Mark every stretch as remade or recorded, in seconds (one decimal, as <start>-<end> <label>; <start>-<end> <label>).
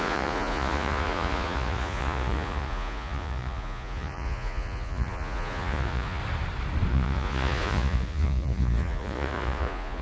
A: 0.0-6.2 remade; 6.2-6.9 recorded; 6.9-10.0 remade